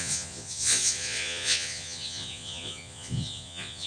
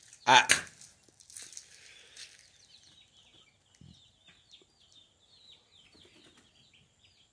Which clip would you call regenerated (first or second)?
first